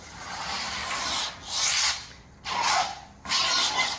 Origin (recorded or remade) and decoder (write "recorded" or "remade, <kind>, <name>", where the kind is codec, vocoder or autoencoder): recorded